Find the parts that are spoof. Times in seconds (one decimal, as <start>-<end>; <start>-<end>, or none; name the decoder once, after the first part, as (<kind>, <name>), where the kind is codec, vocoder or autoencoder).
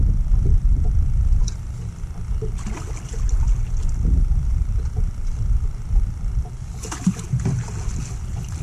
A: 4.5-7.9 (vocoder, BigVGAN v2)